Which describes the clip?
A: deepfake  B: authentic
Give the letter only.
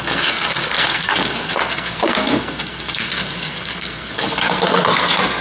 A